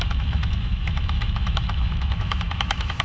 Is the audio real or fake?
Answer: fake